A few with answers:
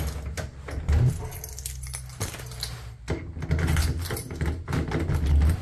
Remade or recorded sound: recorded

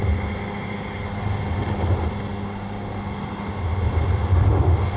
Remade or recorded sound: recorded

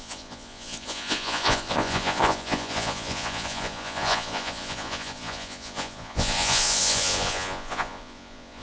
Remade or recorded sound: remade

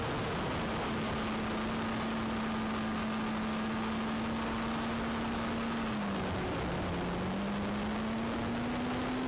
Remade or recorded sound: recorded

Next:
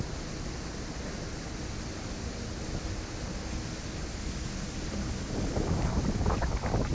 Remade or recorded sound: recorded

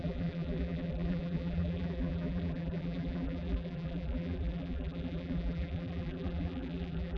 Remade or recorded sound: remade